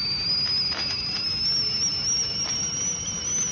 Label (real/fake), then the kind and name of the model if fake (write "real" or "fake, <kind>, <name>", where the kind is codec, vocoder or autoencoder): real